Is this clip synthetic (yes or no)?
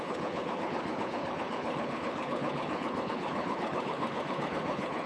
yes